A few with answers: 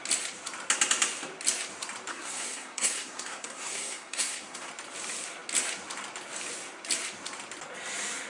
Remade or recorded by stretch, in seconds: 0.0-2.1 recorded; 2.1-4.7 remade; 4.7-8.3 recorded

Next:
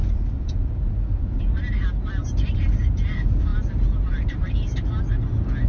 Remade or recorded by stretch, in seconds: 0.0-1.4 remade; 1.4-5.7 recorded

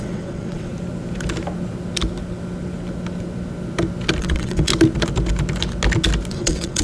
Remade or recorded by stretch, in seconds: 0.0-0.7 remade; 0.7-4.2 recorded; 4.2-4.7 remade; 4.7-6.3 recorded; 6.3-6.8 remade